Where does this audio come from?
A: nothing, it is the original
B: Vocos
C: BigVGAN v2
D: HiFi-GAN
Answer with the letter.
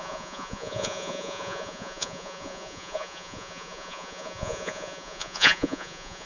B